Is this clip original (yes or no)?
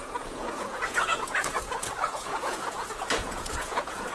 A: no